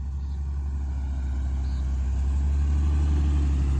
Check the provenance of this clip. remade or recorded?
recorded